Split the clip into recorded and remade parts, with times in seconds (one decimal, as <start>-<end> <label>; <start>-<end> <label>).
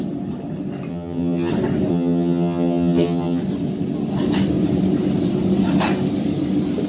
0.0-0.9 recorded; 0.9-1.5 remade; 1.5-1.9 recorded; 1.9-3.4 remade; 3.4-6.9 recorded